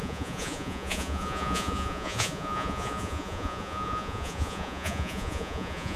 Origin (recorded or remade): remade